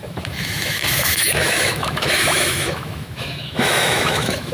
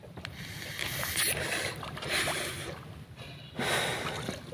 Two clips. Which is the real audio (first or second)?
second